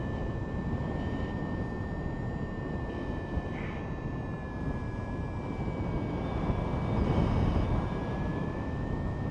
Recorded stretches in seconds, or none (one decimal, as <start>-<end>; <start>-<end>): 0.0-8.3